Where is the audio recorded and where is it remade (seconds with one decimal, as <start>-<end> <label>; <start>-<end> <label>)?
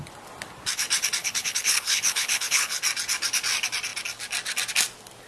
0.0-1.2 recorded; 1.2-2.8 remade; 2.8-5.3 recorded